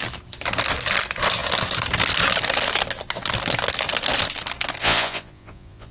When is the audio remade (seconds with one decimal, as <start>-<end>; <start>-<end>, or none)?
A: 4.8-5.9